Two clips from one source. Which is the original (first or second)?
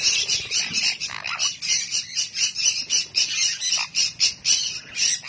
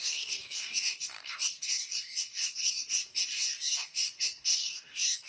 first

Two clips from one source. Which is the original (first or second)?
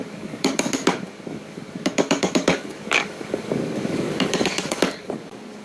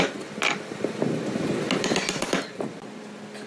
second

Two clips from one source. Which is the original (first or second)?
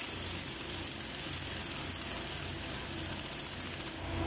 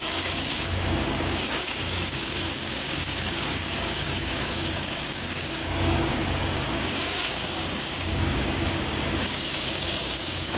first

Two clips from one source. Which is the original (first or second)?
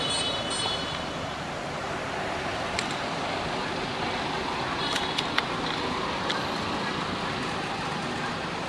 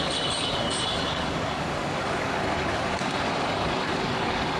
first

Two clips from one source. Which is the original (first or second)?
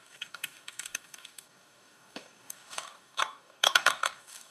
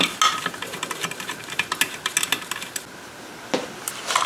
second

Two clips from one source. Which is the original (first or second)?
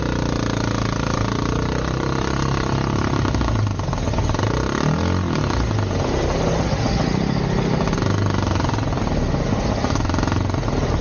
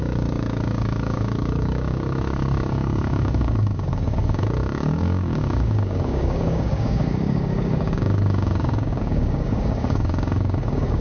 first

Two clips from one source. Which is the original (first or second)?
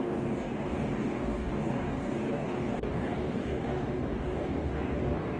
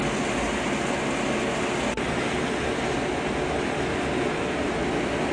second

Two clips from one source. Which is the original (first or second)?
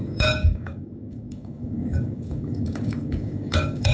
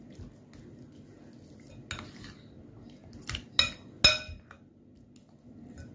second